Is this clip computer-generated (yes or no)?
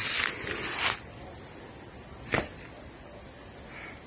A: no